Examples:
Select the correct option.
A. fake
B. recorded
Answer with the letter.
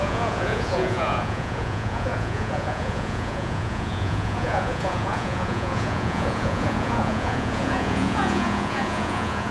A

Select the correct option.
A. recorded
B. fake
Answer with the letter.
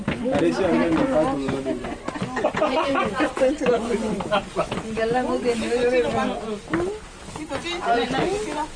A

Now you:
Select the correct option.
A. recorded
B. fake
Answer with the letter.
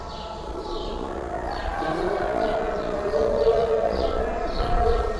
B